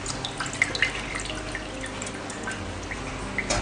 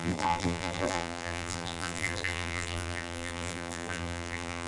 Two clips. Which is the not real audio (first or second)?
second